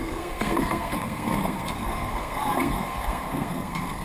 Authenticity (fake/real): fake